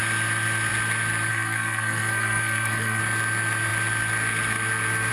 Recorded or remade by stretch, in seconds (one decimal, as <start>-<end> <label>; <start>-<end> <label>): 0.0-1.3 recorded; 1.3-3.0 remade; 3.0-5.1 recorded